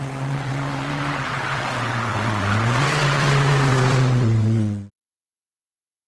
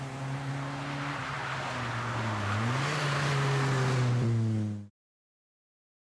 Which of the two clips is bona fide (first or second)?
second